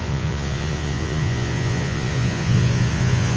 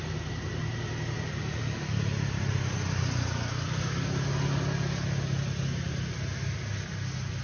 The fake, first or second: first